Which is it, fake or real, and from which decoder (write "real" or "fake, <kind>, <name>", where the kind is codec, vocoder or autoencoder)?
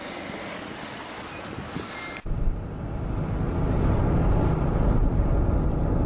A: real